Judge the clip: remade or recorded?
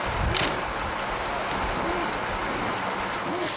recorded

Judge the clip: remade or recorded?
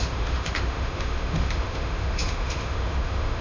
remade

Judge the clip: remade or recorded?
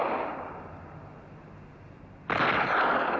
recorded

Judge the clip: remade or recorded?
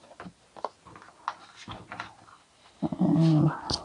recorded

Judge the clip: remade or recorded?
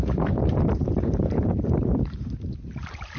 remade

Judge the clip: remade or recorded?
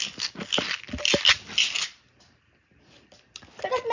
recorded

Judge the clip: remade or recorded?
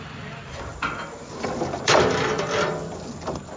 remade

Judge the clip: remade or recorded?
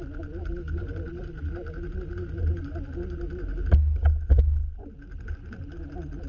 recorded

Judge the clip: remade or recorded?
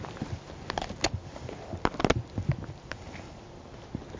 recorded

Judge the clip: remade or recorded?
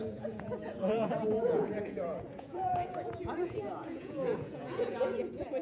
remade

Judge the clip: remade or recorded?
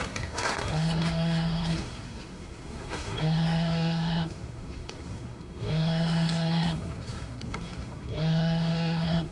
remade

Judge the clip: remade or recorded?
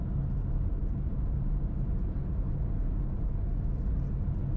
recorded